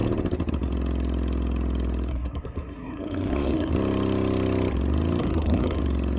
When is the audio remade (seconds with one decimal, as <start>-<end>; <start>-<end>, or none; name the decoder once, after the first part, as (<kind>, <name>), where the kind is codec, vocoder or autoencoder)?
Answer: 2.1-3.7 (codec, SNAC); 5.2-5.8